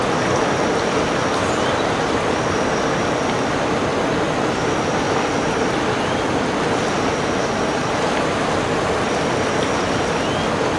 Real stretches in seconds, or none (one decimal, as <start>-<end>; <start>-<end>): 0.0-10.8